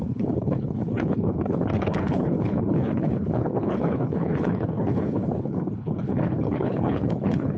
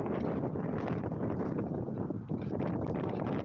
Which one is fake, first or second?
first